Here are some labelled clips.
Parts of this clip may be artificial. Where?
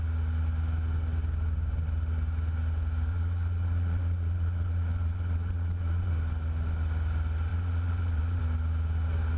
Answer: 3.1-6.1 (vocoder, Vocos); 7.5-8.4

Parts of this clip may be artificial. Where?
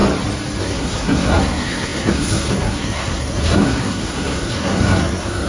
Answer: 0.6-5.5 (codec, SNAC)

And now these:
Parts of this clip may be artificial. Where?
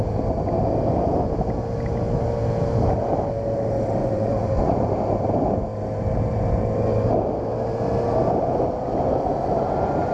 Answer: 4.0-4.9 (vocoder, Vocos)